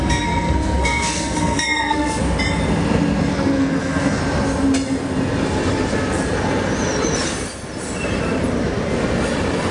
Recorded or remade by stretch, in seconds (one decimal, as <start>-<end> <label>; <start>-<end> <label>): 0.0-2.2 remade; 2.2-3.3 recorded; 3.3-4.2 remade; 4.2-9.7 recorded